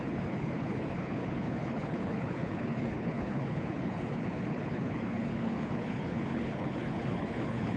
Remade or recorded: remade